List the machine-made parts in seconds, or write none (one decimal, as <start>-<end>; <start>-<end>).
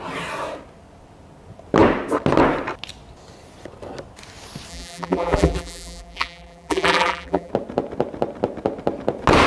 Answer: 4.7-7.5